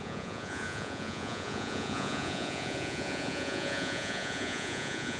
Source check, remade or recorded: remade